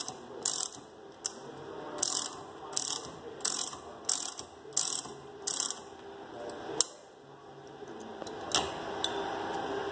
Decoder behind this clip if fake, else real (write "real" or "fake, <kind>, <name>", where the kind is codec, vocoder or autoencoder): real